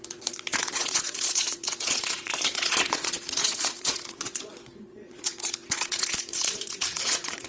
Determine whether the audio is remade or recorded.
remade